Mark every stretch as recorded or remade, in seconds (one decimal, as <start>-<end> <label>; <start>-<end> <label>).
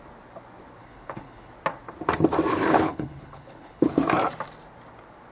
0.0-0.8 recorded; 0.8-1.5 remade; 1.5-2.5 recorded; 2.5-3.9 remade; 3.9-5.3 recorded